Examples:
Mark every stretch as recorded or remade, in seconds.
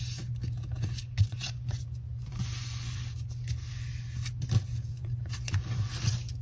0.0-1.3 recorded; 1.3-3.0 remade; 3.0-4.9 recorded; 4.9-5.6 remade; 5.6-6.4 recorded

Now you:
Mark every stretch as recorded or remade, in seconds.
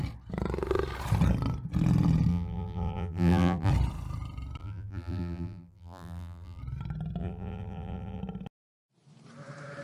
0.0-2.3 recorded; 2.3-3.7 remade; 3.7-4.6 recorded; 4.6-6.6 remade; 6.6-7.2 recorded; 7.2-8.2 remade; 8.2-9.8 recorded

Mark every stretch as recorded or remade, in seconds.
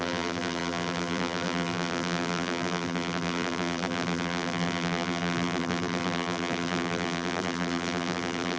0.0-8.6 remade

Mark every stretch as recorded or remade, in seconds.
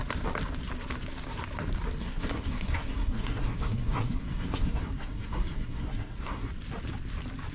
0.0-2.0 recorded; 2.0-6.5 remade; 6.5-7.5 recorded